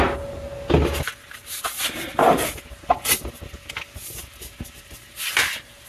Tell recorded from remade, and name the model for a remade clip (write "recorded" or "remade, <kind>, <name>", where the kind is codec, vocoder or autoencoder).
recorded